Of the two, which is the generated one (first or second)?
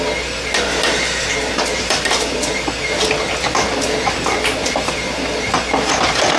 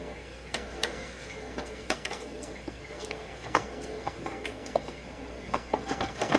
second